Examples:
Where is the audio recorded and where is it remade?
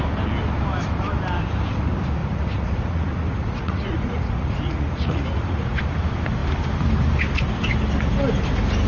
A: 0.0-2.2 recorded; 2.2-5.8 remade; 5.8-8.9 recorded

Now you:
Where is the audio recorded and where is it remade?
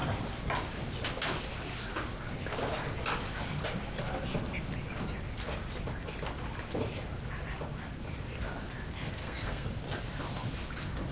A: 0.0-9.2 recorded; 9.2-9.7 remade; 9.7-11.1 recorded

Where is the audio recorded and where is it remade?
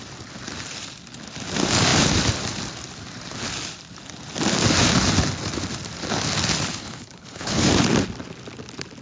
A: 0.0-6.7 recorded; 6.7-7.7 remade; 7.7-9.0 recorded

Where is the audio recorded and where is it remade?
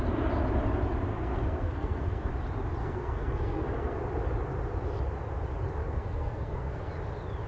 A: 0.0-1.1 recorded; 1.1-2.3 remade; 2.3-2.8 recorded; 2.8-4.0 remade; 4.0-5.8 recorded; 5.8-6.9 remade; 6.9-7.5 recorded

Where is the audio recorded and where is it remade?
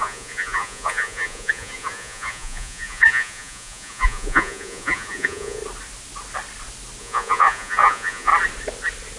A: 0.0-5.6 remade; 5.6-7.0 recorded; 7.0-8.3 remade; 8.3-9.2 recorded